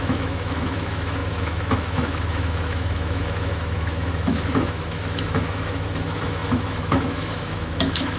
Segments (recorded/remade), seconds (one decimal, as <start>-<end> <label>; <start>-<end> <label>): 0.0-8.2 remade